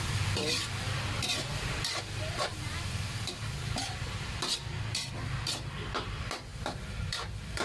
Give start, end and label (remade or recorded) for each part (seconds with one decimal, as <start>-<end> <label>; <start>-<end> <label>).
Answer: 0.0-7.6 remade